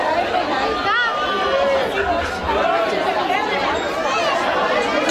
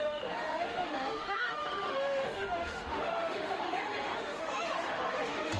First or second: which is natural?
first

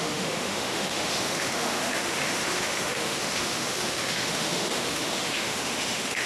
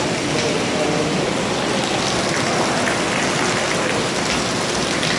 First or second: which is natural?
second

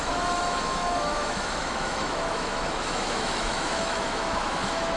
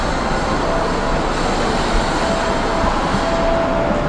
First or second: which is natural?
second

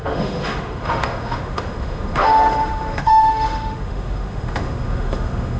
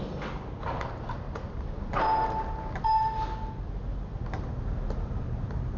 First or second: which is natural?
second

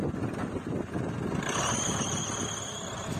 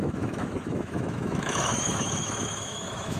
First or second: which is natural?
first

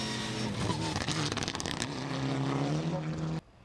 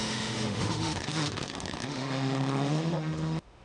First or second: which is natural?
first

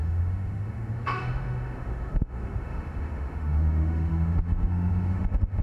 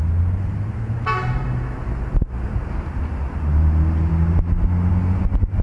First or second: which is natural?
second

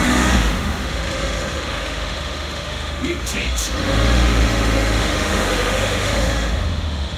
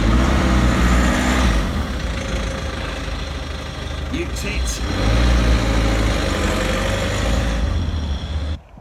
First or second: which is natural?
second